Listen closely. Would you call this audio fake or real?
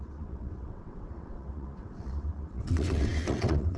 fake